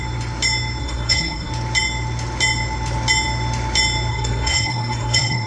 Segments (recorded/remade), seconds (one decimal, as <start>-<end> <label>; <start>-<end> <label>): 0.0-0.8 recorded; 0.8-1.5 remade; 1.5-4.1 recorded; 4.1-5.5 remade